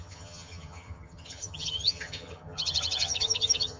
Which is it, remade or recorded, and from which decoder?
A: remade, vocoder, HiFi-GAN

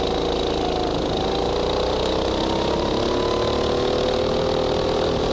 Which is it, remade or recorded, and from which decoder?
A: recorded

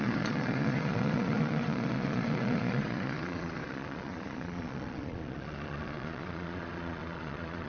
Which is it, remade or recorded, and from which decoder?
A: remade, vocoder, Vocos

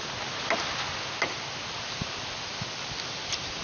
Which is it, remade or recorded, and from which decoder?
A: recorded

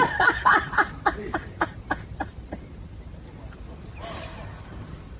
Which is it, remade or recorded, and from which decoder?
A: remade, vocoder, BigVGAN v2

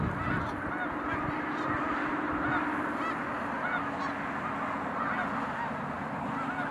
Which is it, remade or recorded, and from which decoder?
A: recorded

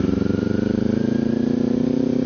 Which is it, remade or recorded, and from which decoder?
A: remade, vocoder, BigVGAN v2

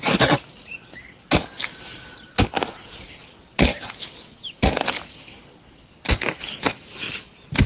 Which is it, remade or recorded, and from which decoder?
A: recorded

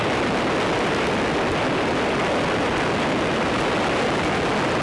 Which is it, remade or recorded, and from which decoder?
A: recorded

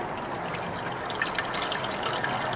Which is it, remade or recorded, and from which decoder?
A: recorded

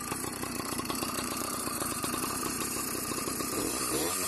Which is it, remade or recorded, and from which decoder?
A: remade, vocoder, BigVGAN v2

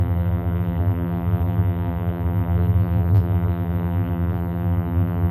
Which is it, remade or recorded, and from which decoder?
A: remade, vocoder, BigVGAN v2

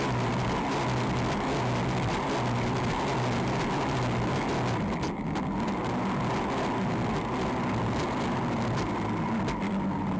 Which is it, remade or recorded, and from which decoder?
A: recorded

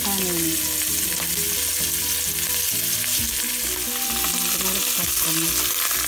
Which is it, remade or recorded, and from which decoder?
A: recorded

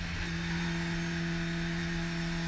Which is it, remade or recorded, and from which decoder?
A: recorded